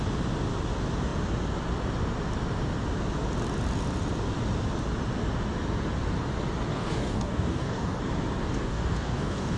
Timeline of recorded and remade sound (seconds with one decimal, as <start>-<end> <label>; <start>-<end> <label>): 0.0-6.7 recorded; 6.7-8.0 remade; 8.0-8.4 recorded; 8.4-9.6 remade